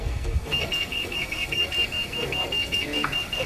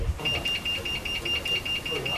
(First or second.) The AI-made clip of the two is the first